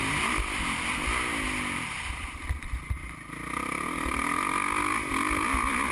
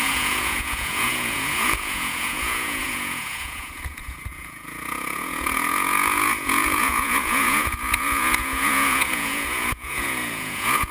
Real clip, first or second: first